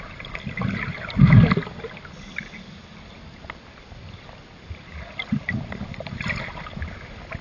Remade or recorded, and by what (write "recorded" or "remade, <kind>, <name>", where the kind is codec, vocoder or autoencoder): recorded